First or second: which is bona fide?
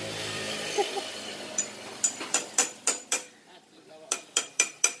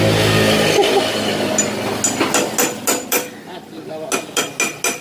second